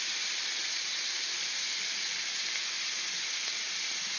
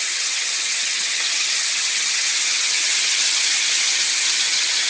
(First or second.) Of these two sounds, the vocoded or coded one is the second